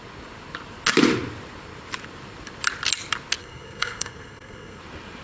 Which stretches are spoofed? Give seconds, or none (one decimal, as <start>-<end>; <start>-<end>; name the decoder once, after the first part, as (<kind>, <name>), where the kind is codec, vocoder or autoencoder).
3.4-4.8 (codec, SNAC)